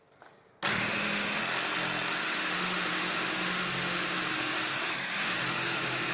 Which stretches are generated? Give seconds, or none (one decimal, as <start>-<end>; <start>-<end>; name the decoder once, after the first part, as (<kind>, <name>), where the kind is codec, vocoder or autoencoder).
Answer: 0.7-1.4 (autoencoder, DAC-VAE); 2.2-6.1